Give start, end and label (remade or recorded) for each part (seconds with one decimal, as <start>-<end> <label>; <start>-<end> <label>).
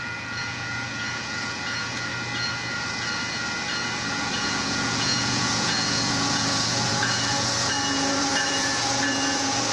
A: 0.0-2.1 remade; 2.1-4.1 recorded; 4.1-9.7 remade